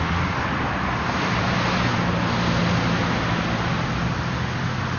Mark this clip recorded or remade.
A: recorded